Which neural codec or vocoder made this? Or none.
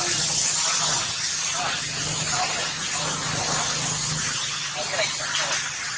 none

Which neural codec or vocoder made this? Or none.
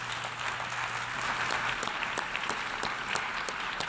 none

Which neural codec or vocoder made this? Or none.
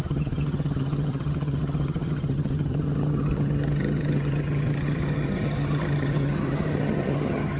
vocoder, HiFi-GAN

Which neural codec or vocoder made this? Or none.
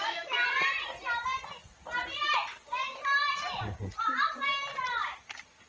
none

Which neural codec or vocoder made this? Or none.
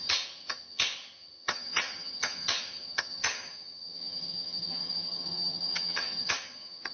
vocoder, HiFi-GAN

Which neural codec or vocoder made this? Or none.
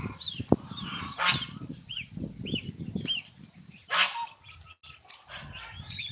none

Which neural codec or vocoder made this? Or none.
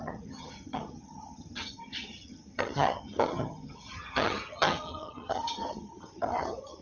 vocoder, HiFi-GAN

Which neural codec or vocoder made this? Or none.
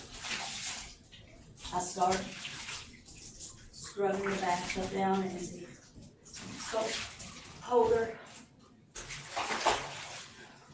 none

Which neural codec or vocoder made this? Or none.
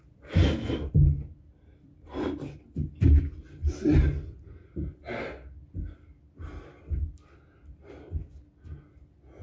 none